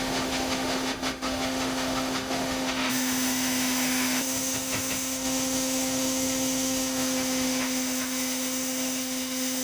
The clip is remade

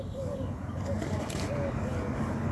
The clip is remade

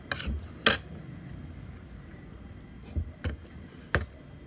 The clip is recorded